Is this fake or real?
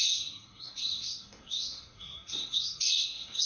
fake